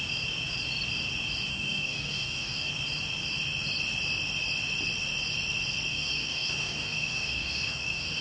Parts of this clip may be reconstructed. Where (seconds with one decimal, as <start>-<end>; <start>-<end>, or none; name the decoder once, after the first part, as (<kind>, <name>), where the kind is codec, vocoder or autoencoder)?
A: 1.5-2.7 (codec, DAC); 5.9-8.2